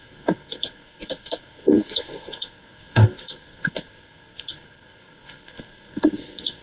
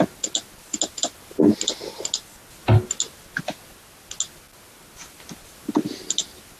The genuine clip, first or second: second